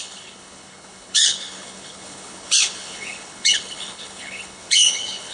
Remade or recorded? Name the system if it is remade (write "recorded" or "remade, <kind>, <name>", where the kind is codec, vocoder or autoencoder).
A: remade, codec, HILCodec